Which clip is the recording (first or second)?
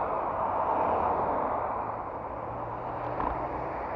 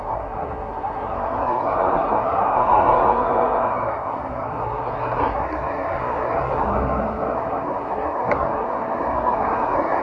first